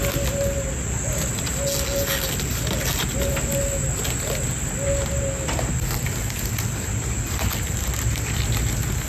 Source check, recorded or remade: recorded